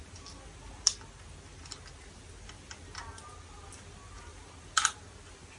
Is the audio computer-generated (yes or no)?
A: no